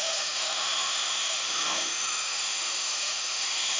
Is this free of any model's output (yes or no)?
no